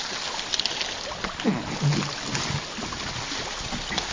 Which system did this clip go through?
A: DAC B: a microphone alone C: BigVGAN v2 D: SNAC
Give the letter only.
B